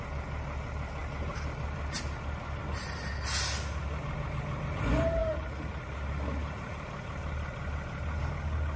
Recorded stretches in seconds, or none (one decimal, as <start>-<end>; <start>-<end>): 0.0-8.8